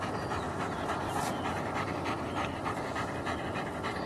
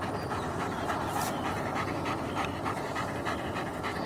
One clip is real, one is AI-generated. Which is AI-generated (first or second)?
first